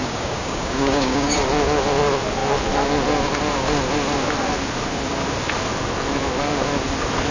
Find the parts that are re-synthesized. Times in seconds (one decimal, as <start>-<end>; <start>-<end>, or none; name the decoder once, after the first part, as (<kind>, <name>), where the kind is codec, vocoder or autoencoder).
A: 0.0-1.4 (codec, DAC)